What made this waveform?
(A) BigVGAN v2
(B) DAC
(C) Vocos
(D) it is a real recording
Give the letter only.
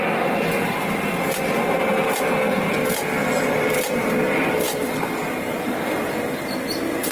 D